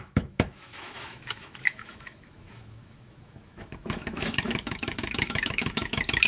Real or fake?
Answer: fake